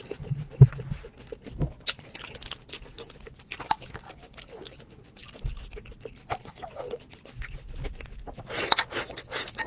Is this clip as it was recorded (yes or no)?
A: yes